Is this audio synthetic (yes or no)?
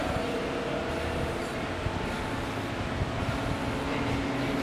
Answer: no